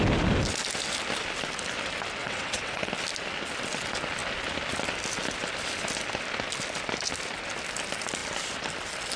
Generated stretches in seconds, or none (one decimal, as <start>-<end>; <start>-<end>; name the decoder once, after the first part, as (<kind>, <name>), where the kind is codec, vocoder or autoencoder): 2.2-2.9 (vocoder, WaveNeXt)